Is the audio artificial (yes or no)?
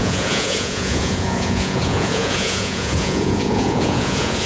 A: yes